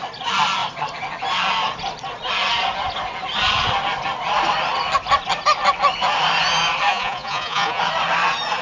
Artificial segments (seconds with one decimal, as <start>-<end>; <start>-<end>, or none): 6.9-7.8